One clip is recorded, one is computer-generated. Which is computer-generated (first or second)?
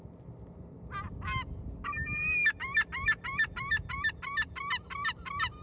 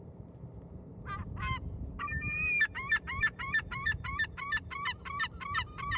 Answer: second